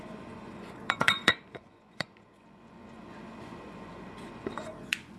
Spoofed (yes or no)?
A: yes